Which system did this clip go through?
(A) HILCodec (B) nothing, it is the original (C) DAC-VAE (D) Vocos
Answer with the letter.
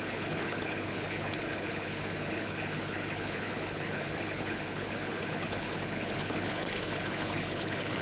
A